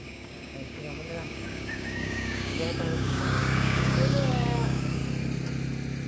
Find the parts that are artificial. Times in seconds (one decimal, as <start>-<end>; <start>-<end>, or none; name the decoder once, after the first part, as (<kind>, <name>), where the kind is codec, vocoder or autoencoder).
0.0-5.0 (codec, DAC)